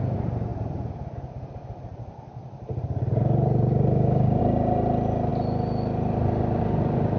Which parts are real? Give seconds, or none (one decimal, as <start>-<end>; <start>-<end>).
0.0-7.2